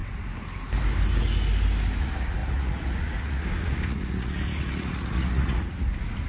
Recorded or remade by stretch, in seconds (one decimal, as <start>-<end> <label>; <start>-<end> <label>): 0.0-2.0 recorded; 2.0-6.3 remade